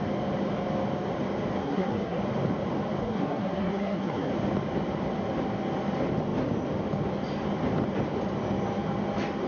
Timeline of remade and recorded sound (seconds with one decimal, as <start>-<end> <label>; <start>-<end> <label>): 0.0-1.6 recorded; 1.6-2.2 remade; 2.2-3.0 recorded; 3.0-4.3 remade; 4.3-9.5 recorded